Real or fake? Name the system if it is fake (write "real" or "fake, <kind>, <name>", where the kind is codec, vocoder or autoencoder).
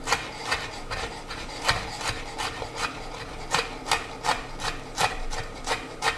real